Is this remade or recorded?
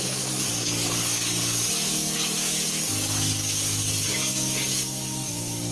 remade